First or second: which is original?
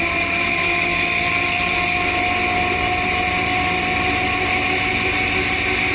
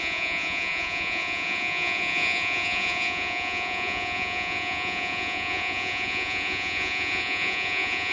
first